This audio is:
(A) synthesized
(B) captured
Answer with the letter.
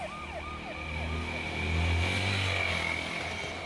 B